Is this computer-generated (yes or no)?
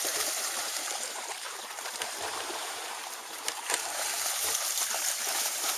yes